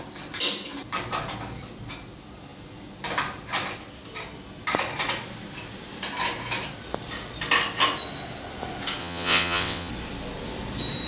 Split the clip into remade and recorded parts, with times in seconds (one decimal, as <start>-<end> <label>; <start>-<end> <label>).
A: 0.0-9.0 recorded; 9.0-9.9 remade; 9.9-11.1 recorded